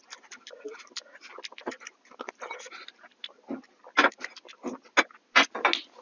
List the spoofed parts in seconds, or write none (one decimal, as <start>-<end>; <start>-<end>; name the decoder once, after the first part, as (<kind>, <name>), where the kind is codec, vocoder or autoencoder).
none